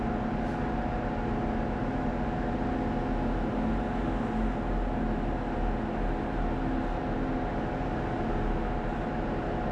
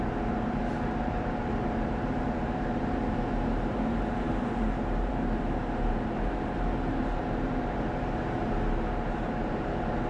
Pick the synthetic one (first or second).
second